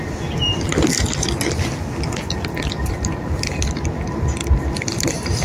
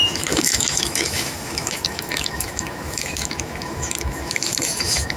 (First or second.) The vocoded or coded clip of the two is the second